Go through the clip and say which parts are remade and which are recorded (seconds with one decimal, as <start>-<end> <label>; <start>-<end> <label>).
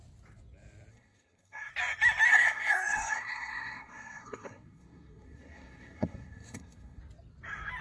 0.0-0.9 recorded; 0.9-1.7 remade; 1.7-2.3 recorded; 2.3-7.0 remade; 7.0-7.8 recorded